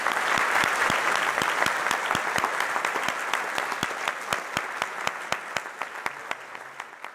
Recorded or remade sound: recorded